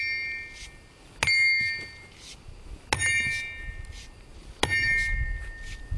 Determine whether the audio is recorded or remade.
recorded